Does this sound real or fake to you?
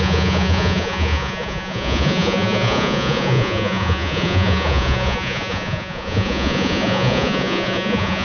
fake